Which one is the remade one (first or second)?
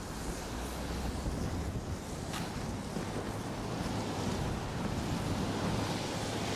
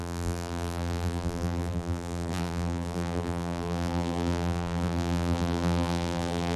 second